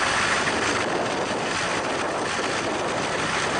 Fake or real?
real